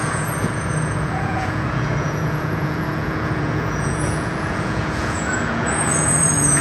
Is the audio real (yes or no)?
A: no